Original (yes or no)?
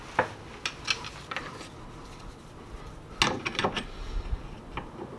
yes